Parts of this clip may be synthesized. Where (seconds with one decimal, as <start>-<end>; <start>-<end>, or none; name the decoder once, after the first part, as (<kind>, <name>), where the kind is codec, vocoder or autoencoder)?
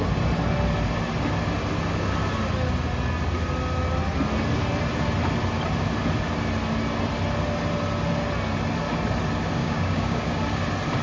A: 9.6-10.4 (codec, DAC)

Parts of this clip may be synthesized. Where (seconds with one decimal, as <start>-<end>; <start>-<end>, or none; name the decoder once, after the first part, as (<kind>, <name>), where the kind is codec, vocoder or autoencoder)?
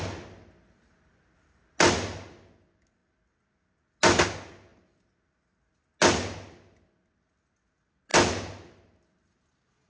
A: none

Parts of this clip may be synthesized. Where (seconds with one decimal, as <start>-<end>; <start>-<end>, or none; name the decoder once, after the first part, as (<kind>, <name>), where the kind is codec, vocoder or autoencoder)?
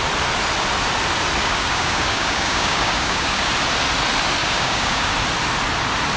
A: 1.4-3.5 (codec, DAC); 4.4-5.1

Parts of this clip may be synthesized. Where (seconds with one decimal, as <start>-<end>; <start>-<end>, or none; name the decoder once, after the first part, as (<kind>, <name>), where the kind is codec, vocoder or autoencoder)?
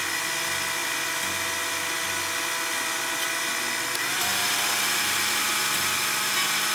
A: none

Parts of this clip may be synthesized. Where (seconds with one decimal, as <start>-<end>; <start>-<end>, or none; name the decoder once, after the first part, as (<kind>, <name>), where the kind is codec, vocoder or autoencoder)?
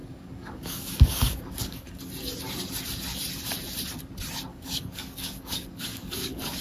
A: 0.0-2.0 (codec, DAC); 4.5-6.6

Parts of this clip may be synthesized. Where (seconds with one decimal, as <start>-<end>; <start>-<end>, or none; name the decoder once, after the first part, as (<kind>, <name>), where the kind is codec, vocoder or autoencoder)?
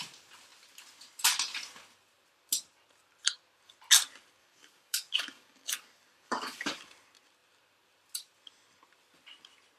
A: 4.4-6.8 (codec, DAC)